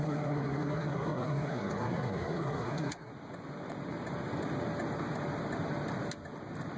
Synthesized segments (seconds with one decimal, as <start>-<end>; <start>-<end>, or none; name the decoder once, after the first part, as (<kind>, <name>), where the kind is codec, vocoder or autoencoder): 0.0-3.1 (codec, SNAC)